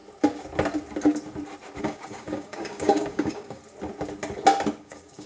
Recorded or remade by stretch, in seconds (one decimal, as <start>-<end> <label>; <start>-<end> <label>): 0.0-1.8 recorded; 1.8-3.6 remade; 3.6-4.8 recorded; 4.8-5.3 remade